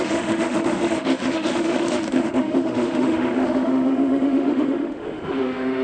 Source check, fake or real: fake